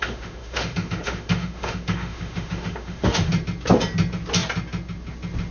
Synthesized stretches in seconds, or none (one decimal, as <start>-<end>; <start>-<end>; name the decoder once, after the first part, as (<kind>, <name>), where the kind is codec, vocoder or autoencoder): 0.0-3.3 (autoencoder, DAC-VAE)